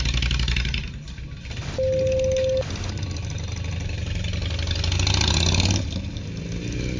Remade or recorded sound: recorded